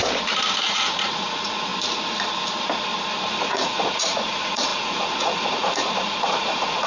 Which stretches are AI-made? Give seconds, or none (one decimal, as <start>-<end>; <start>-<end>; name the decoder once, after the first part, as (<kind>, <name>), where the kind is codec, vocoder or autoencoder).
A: 0.6-1.7 (vocoder, Vocos); 3.5-6.9